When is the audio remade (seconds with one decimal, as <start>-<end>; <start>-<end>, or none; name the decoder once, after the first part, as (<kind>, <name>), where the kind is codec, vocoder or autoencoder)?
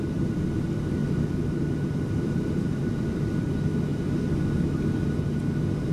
0.0-3.9 (vocoder, BigVGAN v2)